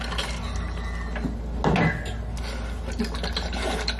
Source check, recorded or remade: recorded